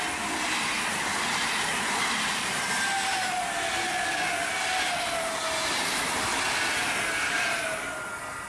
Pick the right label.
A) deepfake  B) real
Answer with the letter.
B